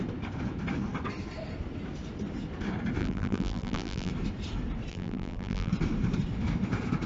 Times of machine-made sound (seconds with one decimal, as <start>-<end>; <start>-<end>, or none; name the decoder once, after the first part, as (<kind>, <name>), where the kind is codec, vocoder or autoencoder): 3.0-4.1 (vocoder, BigVGAN v2); 4.9-5.7